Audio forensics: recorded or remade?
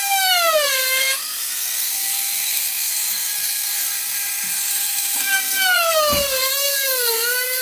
remade